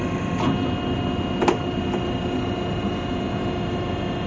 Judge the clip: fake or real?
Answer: real